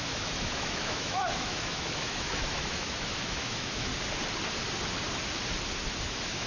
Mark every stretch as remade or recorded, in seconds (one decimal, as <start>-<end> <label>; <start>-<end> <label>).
0.0-3.9 remade; 3.9-6.0 recorded; 6.0-6.5 remade